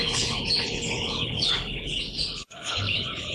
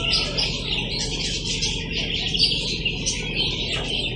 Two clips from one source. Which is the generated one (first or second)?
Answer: first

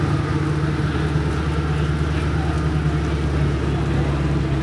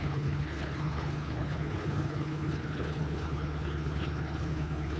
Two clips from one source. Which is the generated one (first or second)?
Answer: second